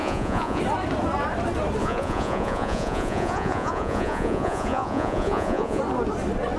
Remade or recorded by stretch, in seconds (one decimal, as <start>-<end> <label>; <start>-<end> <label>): 0.0-0.6 remade; 0.6-1.8 recorded; 1.8-5.8 remade; 5.8-6.6 recorded